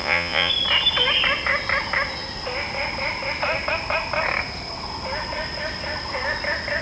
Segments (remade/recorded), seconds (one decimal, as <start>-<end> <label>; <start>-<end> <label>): 0.0-0.5 remade; 0.5-6.8 recorded